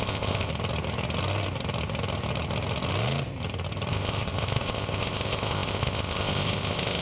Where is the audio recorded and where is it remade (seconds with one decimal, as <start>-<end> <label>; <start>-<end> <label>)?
0.0-0.5 remade; 0.5-3.9 recorded; 3.9-7.0 remade